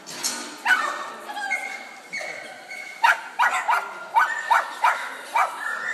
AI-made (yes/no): no